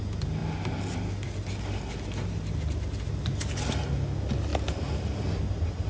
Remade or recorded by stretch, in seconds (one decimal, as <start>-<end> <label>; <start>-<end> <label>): 0.0-5.9 recorded